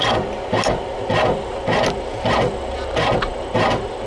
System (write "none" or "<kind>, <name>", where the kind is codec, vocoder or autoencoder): none